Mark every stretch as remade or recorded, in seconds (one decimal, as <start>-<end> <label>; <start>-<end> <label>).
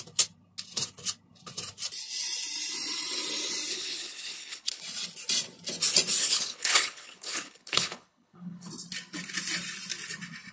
0.0-3.7 recorded; 3.7-4.8 remade; 4.8-6.2 recorded; 6.2-8.7 remade; 8.7-10.5 recorded